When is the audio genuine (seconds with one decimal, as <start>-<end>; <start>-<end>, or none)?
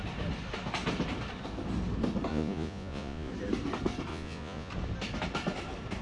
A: 0.0-2.3; 3.3-4.1; 4.7-6.0